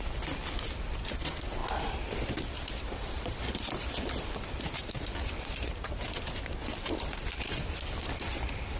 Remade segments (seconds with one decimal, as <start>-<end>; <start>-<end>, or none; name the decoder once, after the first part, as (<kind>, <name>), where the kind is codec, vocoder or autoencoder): 0.0-8.8 (vocoder, BigVGAN v2)